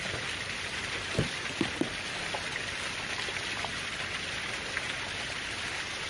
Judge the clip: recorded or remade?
recorded